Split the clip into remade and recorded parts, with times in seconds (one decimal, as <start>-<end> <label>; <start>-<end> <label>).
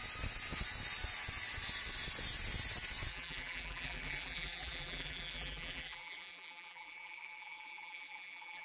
0.0-3.1 recorded; 3.1-8.6 remade